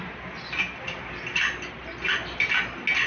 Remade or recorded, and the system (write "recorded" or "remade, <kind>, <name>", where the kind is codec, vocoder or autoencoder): recorded